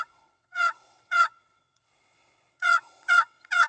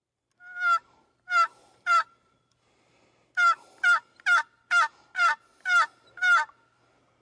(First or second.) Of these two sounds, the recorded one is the second